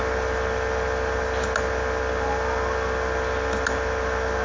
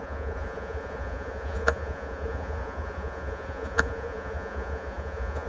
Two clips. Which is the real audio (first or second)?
first